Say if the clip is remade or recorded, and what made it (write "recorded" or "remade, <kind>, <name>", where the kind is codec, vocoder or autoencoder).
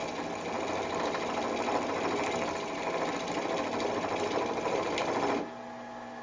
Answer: recorded